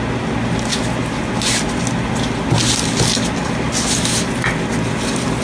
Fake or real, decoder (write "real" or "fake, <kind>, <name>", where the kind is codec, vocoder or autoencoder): real